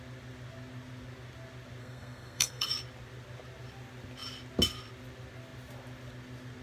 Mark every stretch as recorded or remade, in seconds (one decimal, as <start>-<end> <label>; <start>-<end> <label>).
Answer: 0.0-1.8 recorded; 1.8-2.7 remade; 2.7-6.6 recorded